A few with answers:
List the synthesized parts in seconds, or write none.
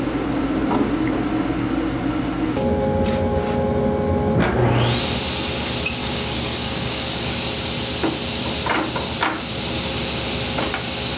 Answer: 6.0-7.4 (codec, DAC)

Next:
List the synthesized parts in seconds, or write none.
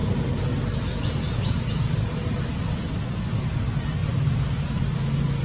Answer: 0.0-3.2 (vocoder, BigVGAN v2); 4.0-4.8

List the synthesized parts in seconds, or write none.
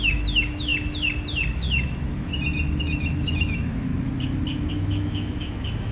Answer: 0.0-0.7 (autoencoder, DAC-VAE); 1.5-2.3; 2.8-3.9; 4.7-5.9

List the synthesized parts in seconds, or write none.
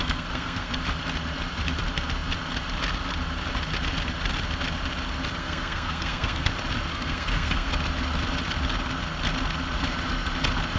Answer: 0.0-0.7 (codec, SNAC); 5.4-6.5; 6.9-7.7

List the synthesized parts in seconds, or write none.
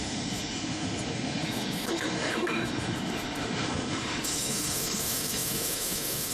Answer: 0.0-6.3 (autoencoder, DAC-VAE)